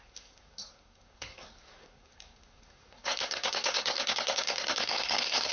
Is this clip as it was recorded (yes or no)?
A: no